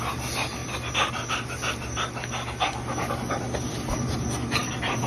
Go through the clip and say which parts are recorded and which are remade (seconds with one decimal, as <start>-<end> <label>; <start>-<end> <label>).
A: 0.0-5.1 recorded